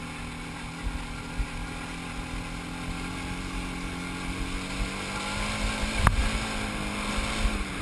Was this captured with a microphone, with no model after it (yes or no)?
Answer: yes